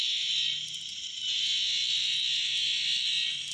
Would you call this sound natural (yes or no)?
yes